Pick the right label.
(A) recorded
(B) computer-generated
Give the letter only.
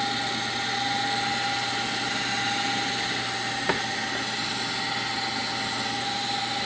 A